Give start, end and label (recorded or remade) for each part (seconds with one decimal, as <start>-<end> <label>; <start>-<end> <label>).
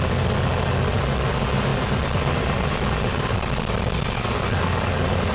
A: 0.0-5.3 recorded